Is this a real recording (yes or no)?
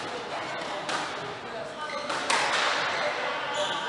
yes